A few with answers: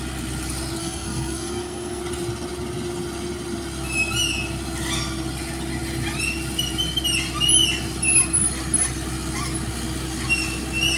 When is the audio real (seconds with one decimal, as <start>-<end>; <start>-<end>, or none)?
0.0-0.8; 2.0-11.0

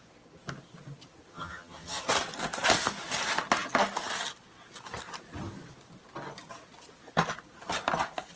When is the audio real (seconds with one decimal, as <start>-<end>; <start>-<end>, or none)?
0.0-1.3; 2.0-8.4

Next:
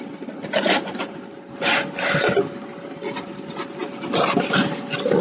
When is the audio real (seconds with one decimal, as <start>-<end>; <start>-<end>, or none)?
0.0-5.2